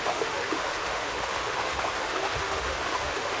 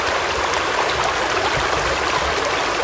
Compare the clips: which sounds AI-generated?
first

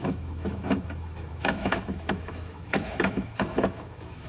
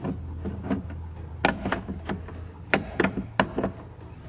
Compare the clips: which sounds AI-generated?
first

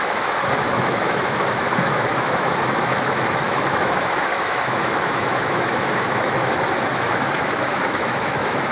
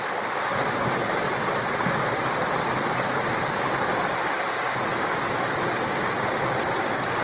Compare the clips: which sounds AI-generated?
first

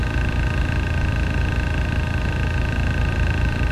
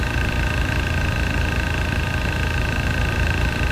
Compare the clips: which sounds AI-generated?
second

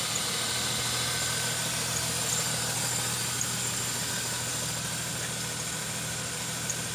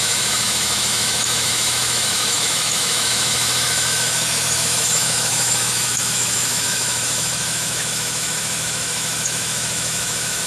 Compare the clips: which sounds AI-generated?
second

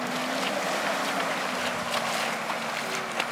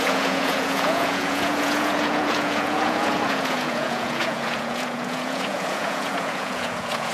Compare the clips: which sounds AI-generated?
second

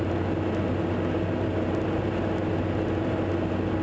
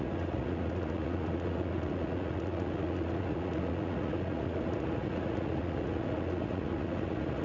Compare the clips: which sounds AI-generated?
second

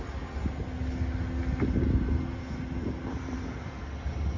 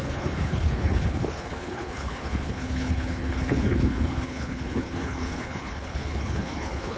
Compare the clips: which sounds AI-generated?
second